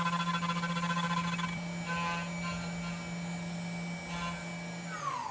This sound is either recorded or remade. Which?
recorded